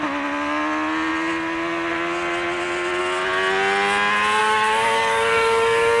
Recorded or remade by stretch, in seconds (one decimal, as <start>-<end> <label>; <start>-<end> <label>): 0.0-4.4 recorded; 4.4-6.0 remade